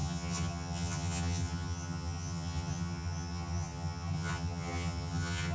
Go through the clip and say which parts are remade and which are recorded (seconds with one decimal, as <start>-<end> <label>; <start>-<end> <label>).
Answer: 0.0-5.5 remade